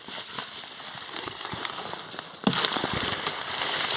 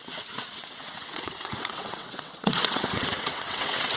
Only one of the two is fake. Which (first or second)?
second